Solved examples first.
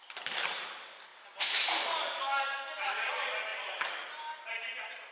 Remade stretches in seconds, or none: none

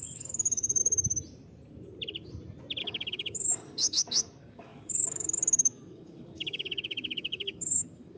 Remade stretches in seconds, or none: 0.0-0.8 (codec, DAC); 2.8-8.2

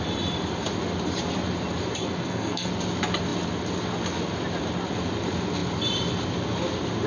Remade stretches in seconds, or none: 2.0-2.7 (codec, SNAC)

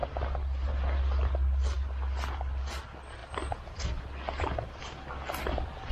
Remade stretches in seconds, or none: none